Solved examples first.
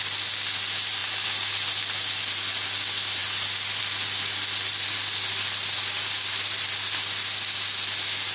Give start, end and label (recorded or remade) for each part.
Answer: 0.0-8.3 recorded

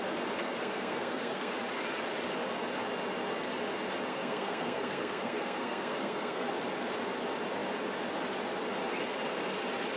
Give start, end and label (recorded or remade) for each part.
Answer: 0.0-0.4 recorded; 0.4-1.5 remade; 1.5-4.1 recorded; 4.1-6.5 remade; 6.5-10.0 recorded

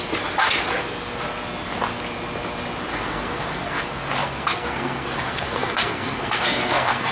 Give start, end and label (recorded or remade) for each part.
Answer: 0.0-2.9 recorded; 2.9-3.8 remade; 3.8-4.2 recorded; 4.2-7.1 remade

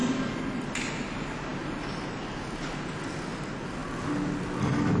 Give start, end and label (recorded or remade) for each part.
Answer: 0.0-5.0 recorded

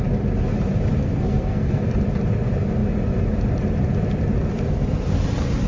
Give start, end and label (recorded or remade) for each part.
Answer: 0.0-1.0 recorded; 1.0-1.8 remade; 1.8-5.7 recorded

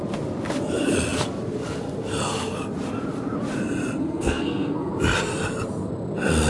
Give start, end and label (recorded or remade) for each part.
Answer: 0.0-4.0 recorded; 4.0-4.9 remade; 4.9-6.5 recorded